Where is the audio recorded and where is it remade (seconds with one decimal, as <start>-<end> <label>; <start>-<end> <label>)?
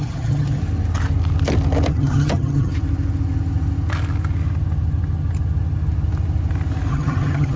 0.0-0.6 remade; 0.6-1.9 recorded; 1.9-2.7 remade; 2.7-6.9 recorded; 6.9-7.6 remade